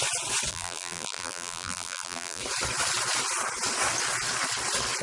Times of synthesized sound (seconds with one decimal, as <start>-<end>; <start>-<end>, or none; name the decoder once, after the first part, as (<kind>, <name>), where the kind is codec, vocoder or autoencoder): 0.5-2.4 (vocoder, BigVGAN v2)